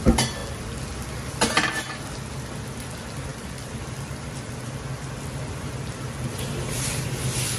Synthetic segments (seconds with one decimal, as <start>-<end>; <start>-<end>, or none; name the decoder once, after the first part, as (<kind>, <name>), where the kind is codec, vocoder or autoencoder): 3.3-4.7 (vocoder, BigVGAN v2)